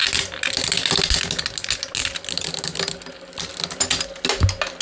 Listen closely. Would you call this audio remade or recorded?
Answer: recorded